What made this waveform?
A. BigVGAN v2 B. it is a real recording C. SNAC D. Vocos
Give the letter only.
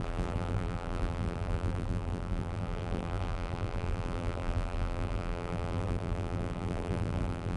A